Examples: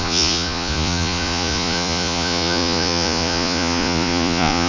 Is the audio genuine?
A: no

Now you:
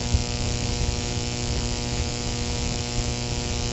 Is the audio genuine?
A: no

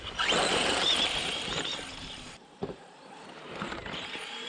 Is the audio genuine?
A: no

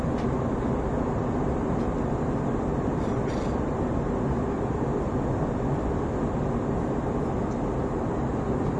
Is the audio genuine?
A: yes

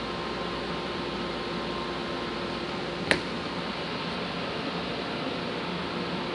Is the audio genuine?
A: yes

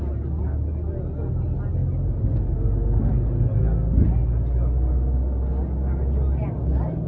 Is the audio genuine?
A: yes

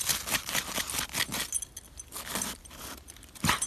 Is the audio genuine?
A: yes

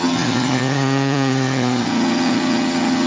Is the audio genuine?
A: no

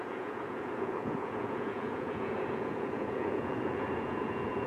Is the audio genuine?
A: no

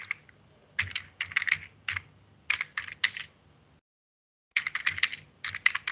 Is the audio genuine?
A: yes